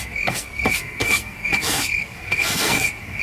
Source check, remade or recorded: remade